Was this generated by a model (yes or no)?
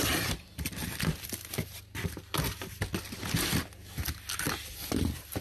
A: no